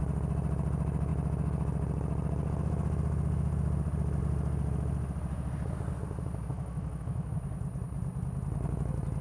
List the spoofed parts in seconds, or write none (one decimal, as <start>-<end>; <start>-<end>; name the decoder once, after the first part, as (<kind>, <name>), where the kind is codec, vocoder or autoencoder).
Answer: 6.5-7.3 (autoencoder, DAC-VAE)